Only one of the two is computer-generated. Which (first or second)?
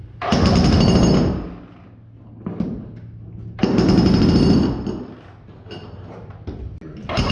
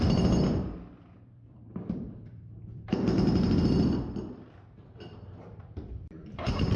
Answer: second